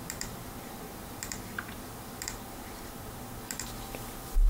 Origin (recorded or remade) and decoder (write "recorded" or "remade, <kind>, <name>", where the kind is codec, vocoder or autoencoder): remade, vocoder, BigVGAN v2